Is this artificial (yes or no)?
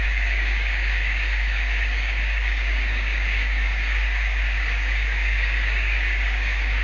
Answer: yes